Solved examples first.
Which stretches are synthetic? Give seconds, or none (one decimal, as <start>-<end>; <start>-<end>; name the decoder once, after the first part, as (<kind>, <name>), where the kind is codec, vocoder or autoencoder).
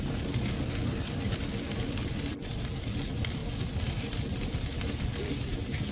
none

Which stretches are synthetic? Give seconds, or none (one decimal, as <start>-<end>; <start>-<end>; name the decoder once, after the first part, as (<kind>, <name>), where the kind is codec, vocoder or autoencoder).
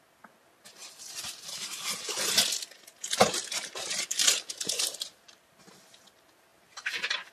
0.8-2.3 (vocoder, BigVGAN v2); 3.0-5.5; 6.5-7.3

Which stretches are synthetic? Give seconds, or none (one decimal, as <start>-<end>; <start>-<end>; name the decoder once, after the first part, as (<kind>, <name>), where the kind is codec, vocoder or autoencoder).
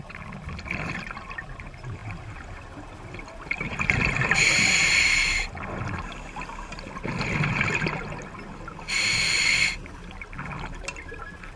none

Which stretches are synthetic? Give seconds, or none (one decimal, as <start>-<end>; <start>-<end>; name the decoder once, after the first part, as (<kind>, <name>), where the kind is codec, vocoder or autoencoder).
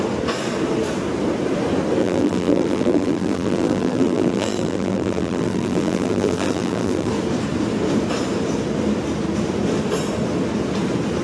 2.0-7.1 (vocoder, BigVGAN v2)